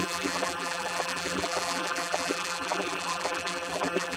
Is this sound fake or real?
fake